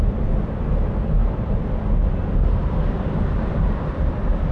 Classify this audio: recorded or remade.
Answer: recorded